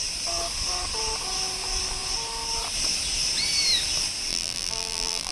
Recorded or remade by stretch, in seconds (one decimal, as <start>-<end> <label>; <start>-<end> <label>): 0.0-4.3 recorded; 4.3-5.3 remade